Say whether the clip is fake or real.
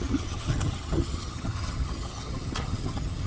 fake